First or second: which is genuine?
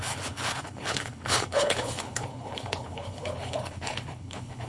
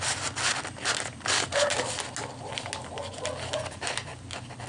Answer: second